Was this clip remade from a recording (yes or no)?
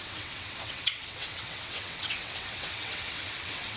yes